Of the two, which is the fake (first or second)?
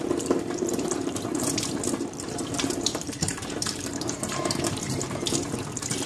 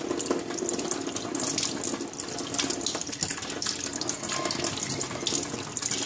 first